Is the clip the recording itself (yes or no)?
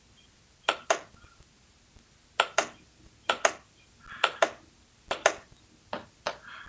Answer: yes